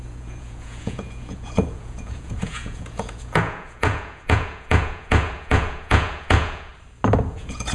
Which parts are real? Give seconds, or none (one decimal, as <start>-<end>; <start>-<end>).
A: 6.7-7.3